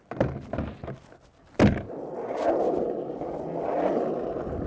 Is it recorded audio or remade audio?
recorded